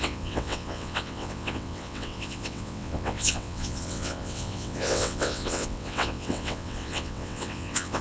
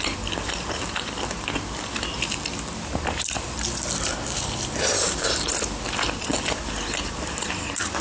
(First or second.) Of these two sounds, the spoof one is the first